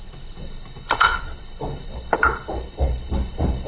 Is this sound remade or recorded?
remade